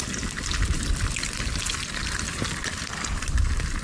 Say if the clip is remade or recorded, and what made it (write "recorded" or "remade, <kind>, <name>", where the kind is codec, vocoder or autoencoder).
recorded